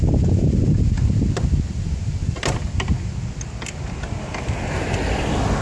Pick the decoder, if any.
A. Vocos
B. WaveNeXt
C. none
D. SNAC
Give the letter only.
C